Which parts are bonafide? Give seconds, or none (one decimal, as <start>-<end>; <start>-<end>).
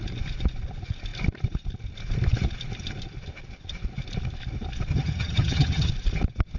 0.0-4.9; 5.9-6.6